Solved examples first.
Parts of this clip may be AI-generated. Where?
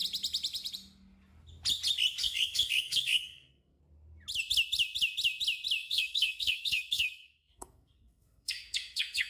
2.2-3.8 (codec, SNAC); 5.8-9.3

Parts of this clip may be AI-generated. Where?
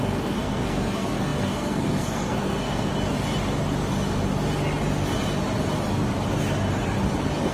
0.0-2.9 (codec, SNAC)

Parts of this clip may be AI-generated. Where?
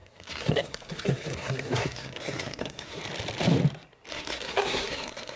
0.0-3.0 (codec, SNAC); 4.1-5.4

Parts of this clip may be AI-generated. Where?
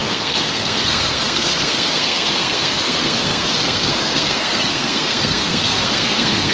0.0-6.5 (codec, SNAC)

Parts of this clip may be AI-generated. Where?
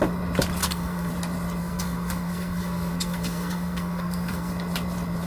0.6-1.1 (codec, SNAC); 1.6-4.5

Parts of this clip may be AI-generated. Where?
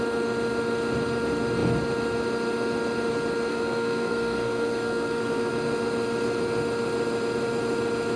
3.5-5.5 (codec, SNAC)